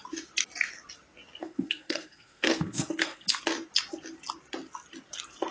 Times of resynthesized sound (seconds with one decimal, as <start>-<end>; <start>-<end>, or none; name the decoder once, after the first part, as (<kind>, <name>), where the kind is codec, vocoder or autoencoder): 1.4-3.4 (codec, SNAC)